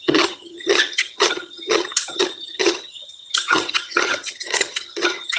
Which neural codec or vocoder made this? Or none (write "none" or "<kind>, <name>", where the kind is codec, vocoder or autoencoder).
vocoder, HiFi-GAN